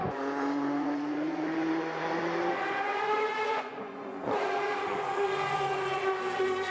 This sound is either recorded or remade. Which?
remade